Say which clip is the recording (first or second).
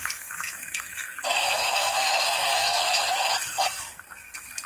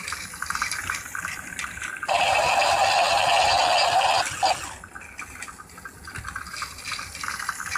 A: second